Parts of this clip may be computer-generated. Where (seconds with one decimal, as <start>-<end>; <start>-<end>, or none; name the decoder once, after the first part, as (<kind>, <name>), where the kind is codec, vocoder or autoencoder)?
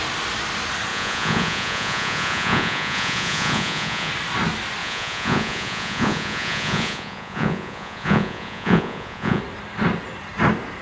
0.9-4.1 (vocoder, Vocos); 4.8-9.4